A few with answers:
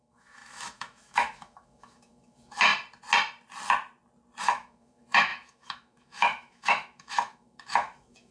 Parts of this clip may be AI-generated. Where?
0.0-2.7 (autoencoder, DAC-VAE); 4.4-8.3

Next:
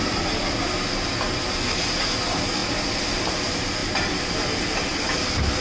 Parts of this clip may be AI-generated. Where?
none

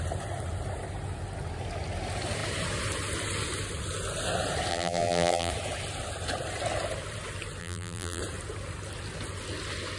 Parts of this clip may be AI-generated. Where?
4.7-5.5 (vocoder, BigVGAN v2); 7.6-8.2

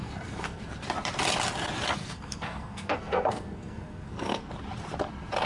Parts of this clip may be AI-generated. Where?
0.0-0.7 (codec, SNAC); 2.0-4.5

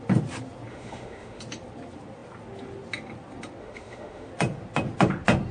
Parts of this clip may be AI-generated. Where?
0.7-1.4 (autoencoder, DAC-VAE); 3.6-4.3